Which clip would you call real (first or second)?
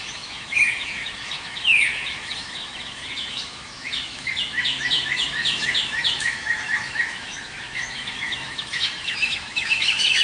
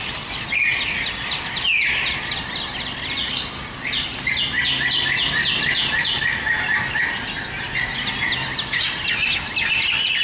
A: second